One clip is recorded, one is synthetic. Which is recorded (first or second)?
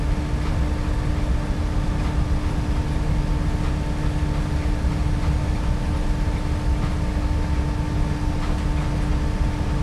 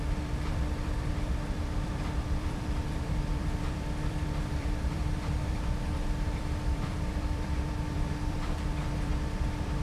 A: first